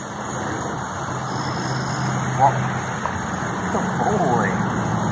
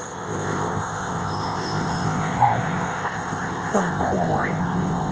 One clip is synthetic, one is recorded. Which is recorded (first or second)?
first